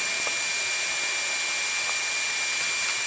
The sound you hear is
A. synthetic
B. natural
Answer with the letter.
B